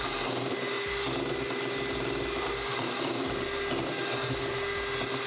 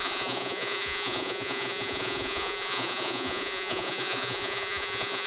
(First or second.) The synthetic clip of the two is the second